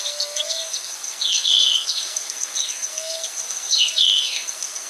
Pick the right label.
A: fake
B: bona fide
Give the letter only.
A